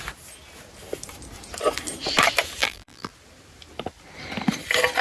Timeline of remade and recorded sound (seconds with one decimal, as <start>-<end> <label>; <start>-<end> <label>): 0.0-2.6 recorded; 2.6-3.1 remade; 3.1-5.0 recorded